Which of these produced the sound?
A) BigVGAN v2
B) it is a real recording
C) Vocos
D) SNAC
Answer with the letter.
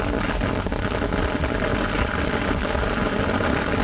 B